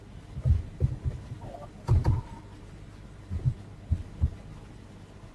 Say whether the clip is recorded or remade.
recorded